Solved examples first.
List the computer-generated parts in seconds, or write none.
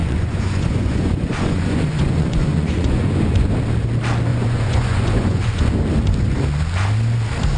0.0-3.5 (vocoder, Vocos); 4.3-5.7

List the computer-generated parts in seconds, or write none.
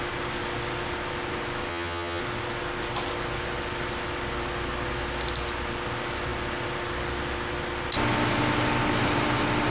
1.7-2.2 (vocoder, HiFi-GAN)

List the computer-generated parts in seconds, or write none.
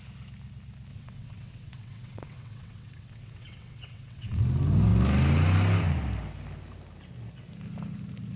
0.9-4.4 (vocoder, WaveNeXt)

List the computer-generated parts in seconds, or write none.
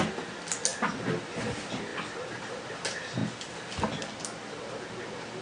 none